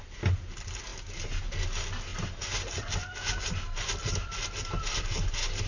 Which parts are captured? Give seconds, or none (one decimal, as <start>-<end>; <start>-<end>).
0.0-5.7

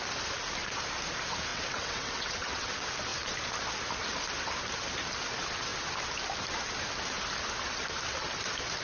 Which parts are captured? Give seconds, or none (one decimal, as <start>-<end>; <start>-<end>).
0.0-1.5; 2.7-8.8

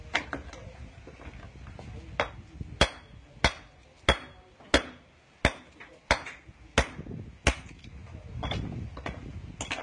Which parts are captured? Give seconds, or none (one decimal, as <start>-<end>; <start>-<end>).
0.0-0.6; 1.3-8.0; 9.3-9.8

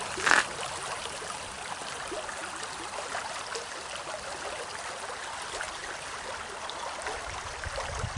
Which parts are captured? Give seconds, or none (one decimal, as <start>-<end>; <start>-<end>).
0.0-8.2

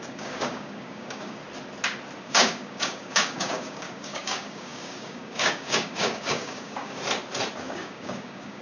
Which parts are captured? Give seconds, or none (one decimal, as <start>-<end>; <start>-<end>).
1.4-2.2; 7.0-7.6

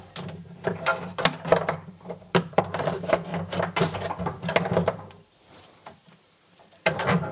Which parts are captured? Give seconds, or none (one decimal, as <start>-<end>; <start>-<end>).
0.9-1.9; 3.3-4.6

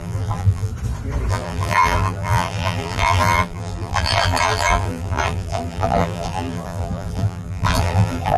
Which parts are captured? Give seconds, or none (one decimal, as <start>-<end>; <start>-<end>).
0.7-1.3

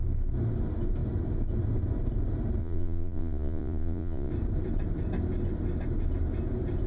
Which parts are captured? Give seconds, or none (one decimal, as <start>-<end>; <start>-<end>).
0.0-2.6; 4.3-6.9